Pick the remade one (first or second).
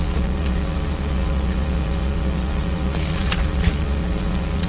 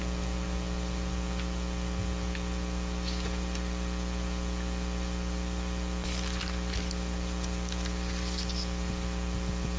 first